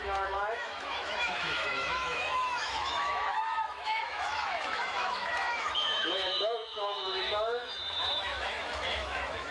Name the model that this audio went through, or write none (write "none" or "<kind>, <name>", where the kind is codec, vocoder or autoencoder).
autoencoder, DAC-VAE